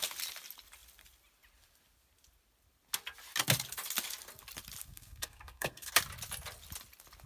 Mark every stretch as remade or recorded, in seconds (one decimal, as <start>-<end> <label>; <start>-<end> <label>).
0.0-4.8 recorded; 4.8-5.9 remade; 5.9-7.3 recorded